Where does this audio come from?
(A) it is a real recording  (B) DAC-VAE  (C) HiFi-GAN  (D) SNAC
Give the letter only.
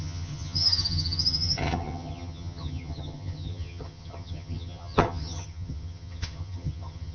C